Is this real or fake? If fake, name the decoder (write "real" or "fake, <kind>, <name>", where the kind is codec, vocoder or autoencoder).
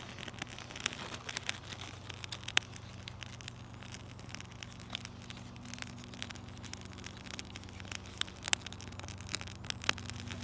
real